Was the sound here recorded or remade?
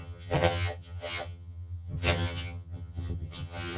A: remade